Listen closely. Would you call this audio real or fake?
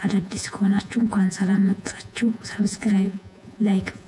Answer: fake